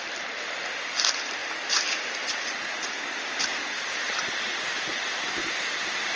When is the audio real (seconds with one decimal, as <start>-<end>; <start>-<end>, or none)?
none